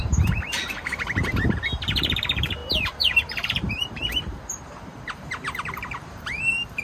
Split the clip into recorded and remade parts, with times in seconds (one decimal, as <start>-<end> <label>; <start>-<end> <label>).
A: 0.0-6.8 remade